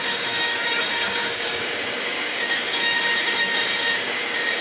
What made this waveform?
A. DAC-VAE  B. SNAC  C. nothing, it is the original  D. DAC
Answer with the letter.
D